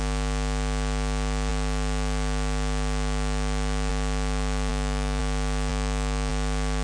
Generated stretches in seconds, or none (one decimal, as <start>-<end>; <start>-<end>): 4.7-5.2; 5.7-6.3

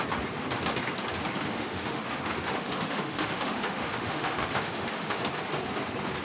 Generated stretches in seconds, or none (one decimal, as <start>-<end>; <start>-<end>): 1.5-5.2

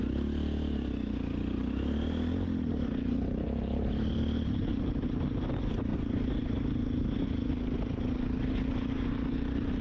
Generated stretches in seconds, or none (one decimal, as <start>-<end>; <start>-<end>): none

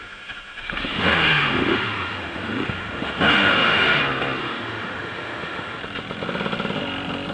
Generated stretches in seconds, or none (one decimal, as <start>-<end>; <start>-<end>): 0.0-4.0; 4.4-5.8